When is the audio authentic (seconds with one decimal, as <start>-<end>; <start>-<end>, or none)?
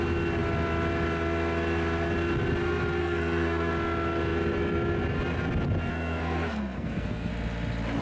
0.0-3.0; 3.7-5.9; 7.3-8.0